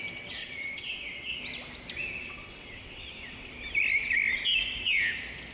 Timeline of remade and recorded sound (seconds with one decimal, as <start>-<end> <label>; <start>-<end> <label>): 0.0-0.4 recorded; 0.4-1.4 remade; 1.4-2.2 recorded; 2.2-3.5 remade; 3.5-5.5 recorded